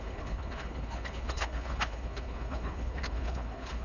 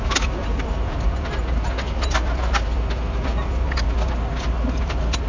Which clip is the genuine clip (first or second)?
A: second